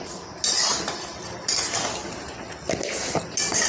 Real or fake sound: real